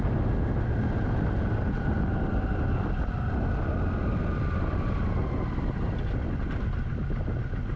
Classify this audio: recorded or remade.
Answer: recorded